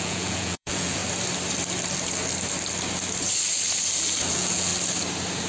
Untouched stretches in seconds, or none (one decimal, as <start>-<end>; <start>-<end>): 1.0-4.3; 4.7-5.5